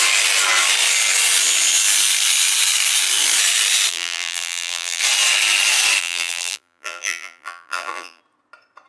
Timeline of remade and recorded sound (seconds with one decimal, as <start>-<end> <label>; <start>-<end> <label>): 0.0-3.9 recorded; 3.9-5.0 remade; 5.0-6.0 recorded; 6.0-8.2 remade; 8.2-8.9 recorded